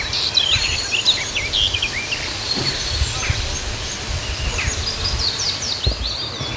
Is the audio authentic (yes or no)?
yes